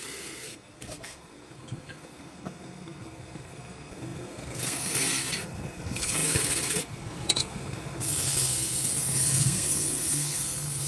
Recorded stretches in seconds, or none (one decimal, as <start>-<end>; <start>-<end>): none